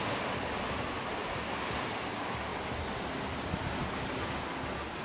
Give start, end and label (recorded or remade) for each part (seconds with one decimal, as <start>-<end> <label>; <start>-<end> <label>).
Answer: 0.0-5.0 recorded